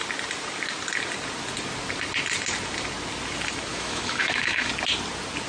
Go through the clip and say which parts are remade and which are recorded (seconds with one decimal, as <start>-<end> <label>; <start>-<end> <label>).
0.0-3.7 recorded; 3.7-4.7 remade; 4.7-5.5 recorded